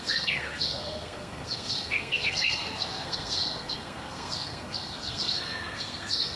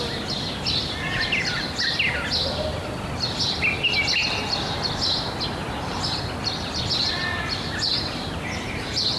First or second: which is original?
second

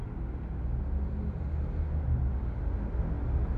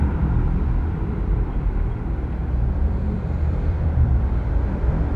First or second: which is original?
first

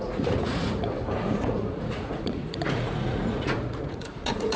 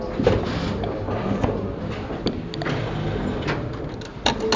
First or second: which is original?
second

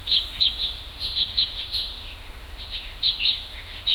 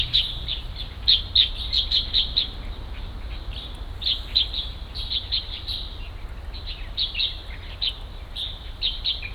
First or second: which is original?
second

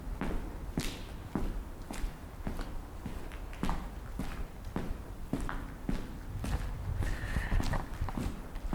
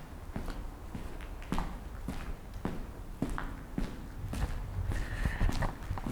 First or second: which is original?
second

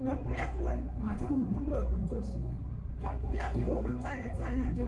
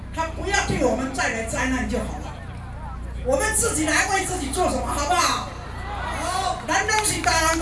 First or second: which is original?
second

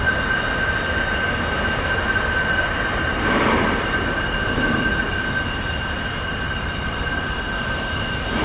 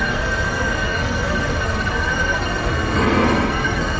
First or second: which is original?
first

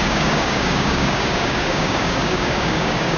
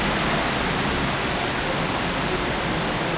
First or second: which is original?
second